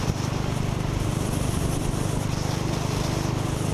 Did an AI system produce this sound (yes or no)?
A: no